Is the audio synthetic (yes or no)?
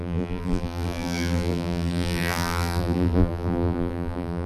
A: yes